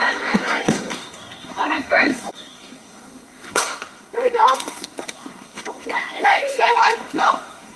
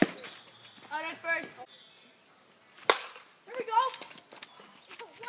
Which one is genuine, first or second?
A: second